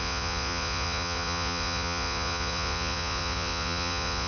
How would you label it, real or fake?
fake